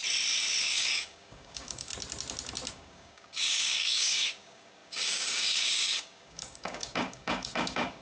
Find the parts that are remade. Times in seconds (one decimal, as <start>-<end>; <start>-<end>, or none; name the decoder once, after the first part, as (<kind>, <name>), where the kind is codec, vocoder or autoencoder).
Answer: 0.6-1.9 (codec, DAC); 2.7-8.0